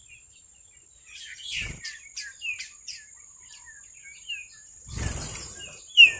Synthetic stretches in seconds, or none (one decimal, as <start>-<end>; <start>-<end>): 0.0-3.5; 4.0-5.8